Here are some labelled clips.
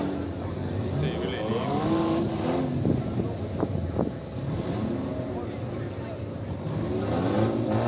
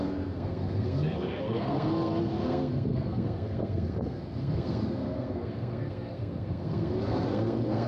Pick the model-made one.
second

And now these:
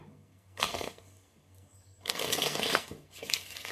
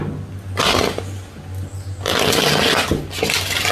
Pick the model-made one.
first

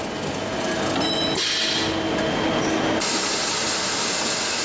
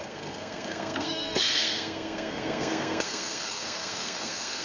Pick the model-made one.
second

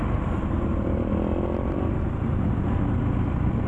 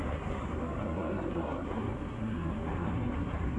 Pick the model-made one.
second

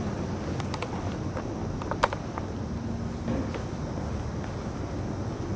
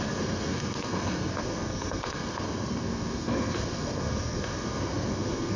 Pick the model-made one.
second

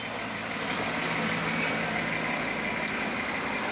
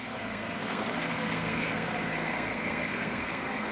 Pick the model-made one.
second